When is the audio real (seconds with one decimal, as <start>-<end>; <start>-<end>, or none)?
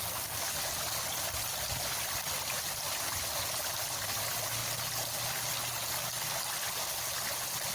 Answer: 0.0-7.7